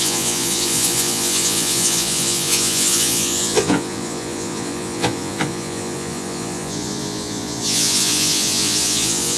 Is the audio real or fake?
fake